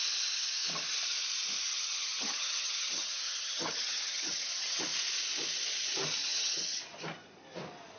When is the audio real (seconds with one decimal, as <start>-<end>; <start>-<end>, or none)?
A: 0.0-1.7; 4.8-6.2; 6.8-8.0